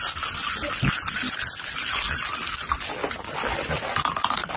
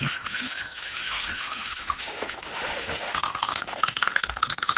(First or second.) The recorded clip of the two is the first